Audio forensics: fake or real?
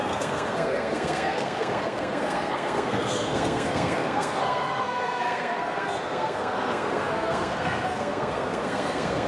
fake